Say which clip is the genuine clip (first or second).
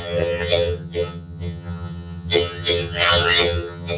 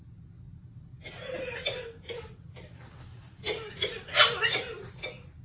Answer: second